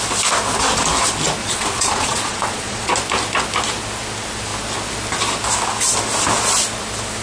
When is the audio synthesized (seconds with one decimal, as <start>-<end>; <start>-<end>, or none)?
1.4-2.9